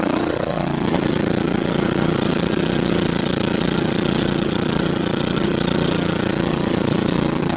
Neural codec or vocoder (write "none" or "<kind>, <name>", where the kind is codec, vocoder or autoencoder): vocoder, Vocos